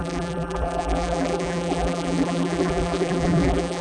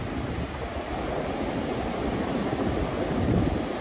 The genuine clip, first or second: second